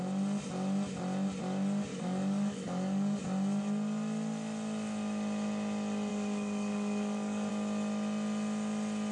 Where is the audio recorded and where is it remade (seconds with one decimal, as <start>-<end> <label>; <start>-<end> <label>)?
0.0-1.9 recorded; 1.9-3.2 remade; 3.2-6.1 recorded; 6.1-7.5 remade; 7.5-9.1 recorded